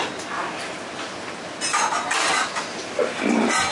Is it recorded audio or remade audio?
recorded